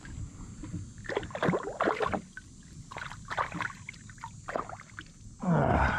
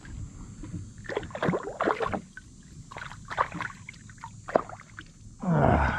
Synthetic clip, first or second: first